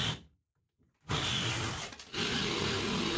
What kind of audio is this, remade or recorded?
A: recorded